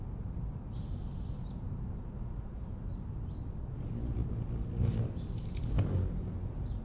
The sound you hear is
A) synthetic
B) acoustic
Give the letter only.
B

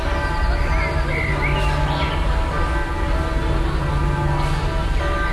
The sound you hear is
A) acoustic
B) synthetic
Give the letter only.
A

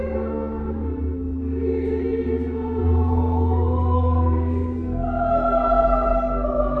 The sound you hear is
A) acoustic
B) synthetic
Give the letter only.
B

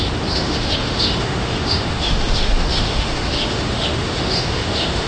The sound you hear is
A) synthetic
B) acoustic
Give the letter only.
A